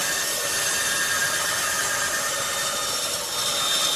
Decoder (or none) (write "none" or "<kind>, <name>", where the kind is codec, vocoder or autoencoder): none